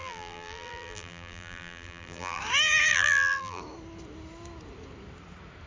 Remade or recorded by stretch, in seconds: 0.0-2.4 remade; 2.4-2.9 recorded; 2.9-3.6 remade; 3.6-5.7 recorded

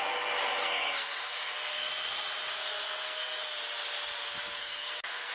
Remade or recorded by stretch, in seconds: 0.0-0.6 recorded; 0.6-1.9 remade; 1.9-2.5 recorded; 2.5-3.4 remade; 3.4-4.6 recorded; 4.6-5.3 remade

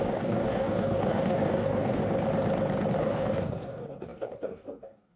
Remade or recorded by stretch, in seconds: 0.0-2.0 remade; 2.0-2.9 recorded; 2.9-5.2 remade

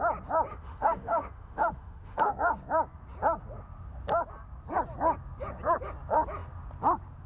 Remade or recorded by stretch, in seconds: 0.0-0.5 recorded; 0.5-2.3 remade; 2.3-7.3 recorded

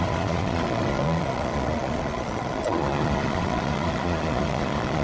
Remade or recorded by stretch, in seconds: 0.0-5.0 remade

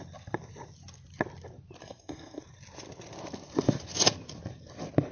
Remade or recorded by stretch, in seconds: 0.0-1.8 recorded; 1.8-2.4 remade; 2.4-5.1 recorded

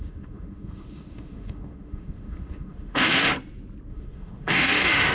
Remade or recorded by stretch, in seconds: 0.0-3.3 remade; 3.3-3.9 recorded; 3.9-5.1 remade